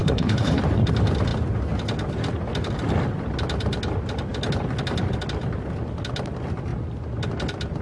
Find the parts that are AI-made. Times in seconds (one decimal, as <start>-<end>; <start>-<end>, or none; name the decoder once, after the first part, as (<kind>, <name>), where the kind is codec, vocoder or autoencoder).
0.0-0.6 (codec, HILCodec)